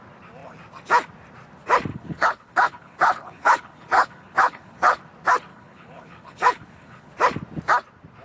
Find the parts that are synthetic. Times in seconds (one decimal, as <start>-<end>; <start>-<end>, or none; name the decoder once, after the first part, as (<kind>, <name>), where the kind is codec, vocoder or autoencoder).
1.9-5.0 (codec, HILCodec); 5.5-7.1